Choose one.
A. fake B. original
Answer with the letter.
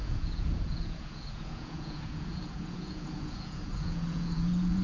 A